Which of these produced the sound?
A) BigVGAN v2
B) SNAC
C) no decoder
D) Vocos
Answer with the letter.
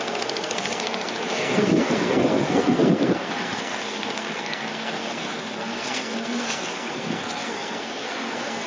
B